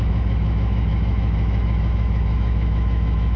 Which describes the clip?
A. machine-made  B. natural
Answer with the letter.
A